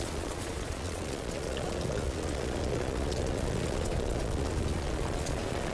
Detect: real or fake fake